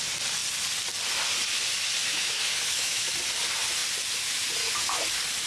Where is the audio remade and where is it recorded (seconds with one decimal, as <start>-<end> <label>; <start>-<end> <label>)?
0.0-2.1 recorded; 2.1-3.1 remade; 3.1-5.5 recorded